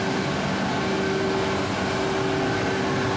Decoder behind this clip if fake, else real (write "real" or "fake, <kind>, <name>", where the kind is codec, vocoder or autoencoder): real